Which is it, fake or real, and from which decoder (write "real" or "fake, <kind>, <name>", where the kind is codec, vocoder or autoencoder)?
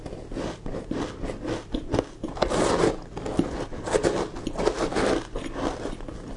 real